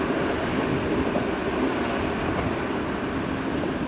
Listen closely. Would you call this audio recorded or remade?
recorded